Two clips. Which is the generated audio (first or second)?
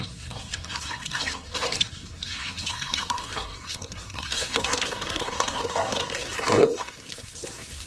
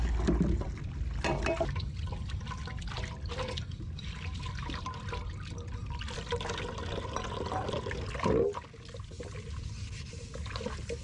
first